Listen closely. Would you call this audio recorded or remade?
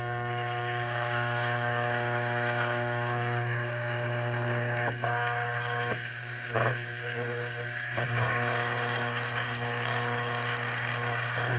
remade